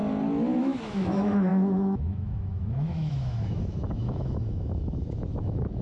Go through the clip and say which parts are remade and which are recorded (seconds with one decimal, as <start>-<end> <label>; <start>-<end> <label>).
0.0-0.6 recorded; 0.6-5.8 remade